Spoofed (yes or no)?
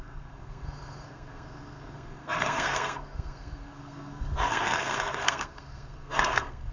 yes